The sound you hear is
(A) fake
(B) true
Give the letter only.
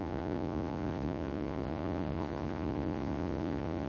A